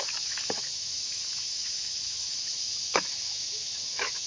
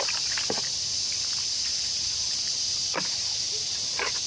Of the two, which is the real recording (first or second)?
second